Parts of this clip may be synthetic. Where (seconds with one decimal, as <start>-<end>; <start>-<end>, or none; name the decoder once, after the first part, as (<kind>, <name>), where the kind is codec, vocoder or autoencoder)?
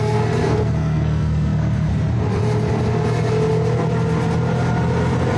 0.0-1.9 (codec, SNAC)